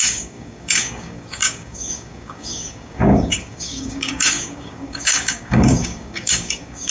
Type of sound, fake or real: fake